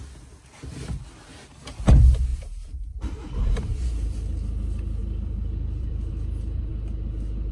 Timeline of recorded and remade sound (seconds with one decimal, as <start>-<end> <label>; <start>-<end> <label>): 0.0-2.3 recorded; 2.3-3.2 remade; 3.2-5.0 recorded; 5.0-6.1 remade; 6.1-7.5 recorded